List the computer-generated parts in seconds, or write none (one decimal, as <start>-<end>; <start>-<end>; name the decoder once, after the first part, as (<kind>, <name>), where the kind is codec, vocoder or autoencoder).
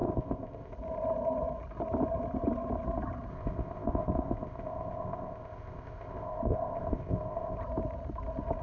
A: 0.0-0.7 (codec, ZipCodec); 3.3-7.6